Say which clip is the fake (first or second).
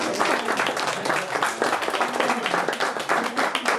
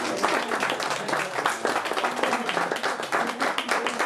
first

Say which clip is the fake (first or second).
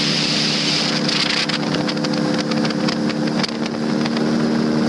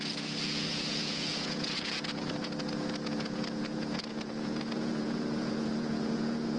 second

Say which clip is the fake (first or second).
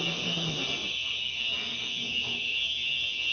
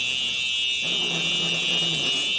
first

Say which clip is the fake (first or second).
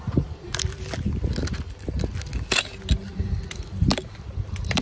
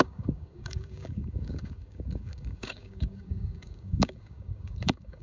second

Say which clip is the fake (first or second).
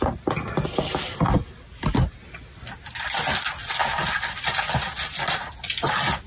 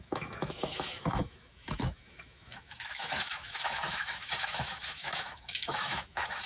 second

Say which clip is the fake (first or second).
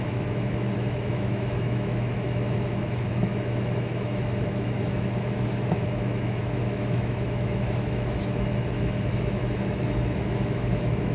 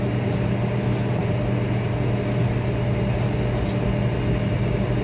first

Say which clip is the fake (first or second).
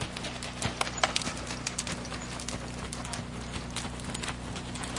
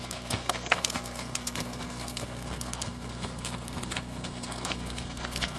second